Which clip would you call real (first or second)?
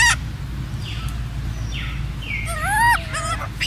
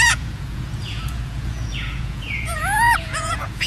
first